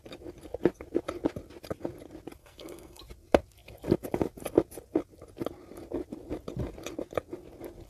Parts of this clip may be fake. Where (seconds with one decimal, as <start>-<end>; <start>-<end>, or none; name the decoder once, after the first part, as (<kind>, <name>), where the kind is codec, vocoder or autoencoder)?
2.4-3.0 (codec, SNAC)